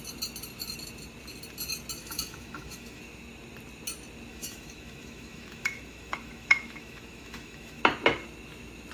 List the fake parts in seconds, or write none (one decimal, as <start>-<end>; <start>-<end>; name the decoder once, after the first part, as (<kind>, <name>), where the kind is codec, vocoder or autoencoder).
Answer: 2.0-3.0 (autoencoder, DAC-VAE); 4.3-7.8